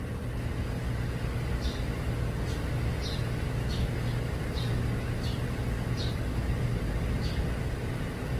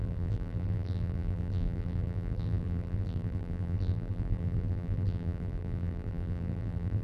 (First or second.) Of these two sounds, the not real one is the second